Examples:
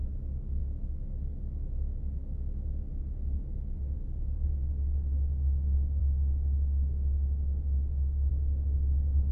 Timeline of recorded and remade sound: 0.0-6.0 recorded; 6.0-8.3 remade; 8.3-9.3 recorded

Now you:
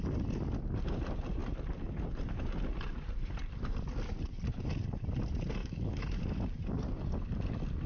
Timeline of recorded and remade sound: 0.0-5.6 recorded; 5.6-6.2 remade; 6.2-7.9 recorded

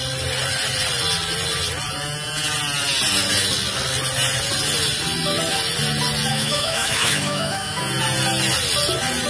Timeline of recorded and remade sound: 0.0-6.3 recorded; 6.3-7.8 remade; 7.8-9.3 recorded

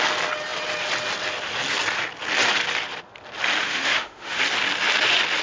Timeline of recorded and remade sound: 0.0-3.6 recorded; 3.6-4.4 remade; 4.4-5.4 recorded